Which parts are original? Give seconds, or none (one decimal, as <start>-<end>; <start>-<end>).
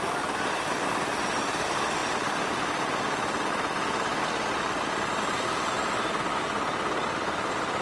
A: 0.0-7.8